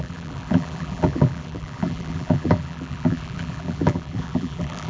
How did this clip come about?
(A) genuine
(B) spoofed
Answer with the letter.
B